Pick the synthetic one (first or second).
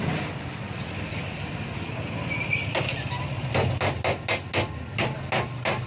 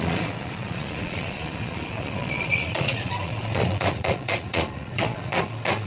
second